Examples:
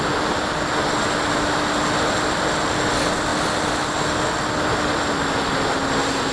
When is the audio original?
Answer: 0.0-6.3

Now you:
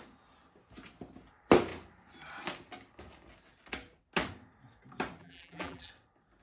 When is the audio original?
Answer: 0.0-5.2; 5.9-6.4

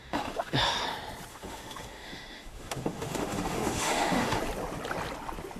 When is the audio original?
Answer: 0.7-1.3; 4.4-5.6

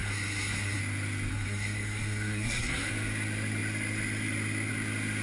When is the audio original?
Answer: 0.8-1.3; 2.9-5.2

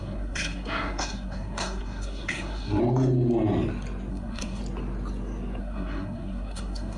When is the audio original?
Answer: 2.8-4.1; 4.6-5.6